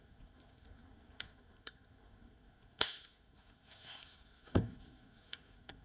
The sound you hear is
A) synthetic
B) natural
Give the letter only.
A